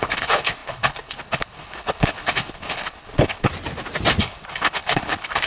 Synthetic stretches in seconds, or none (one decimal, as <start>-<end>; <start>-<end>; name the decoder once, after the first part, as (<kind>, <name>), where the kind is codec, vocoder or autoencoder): 0.0-3.5 (codec, HILCodec); 4.2-5.5